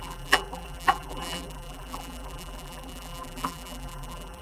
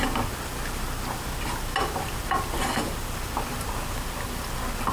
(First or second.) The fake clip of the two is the first